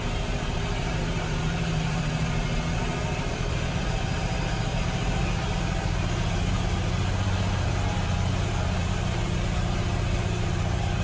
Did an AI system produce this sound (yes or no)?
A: yes